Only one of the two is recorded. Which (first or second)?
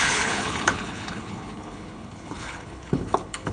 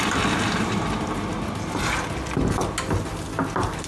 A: second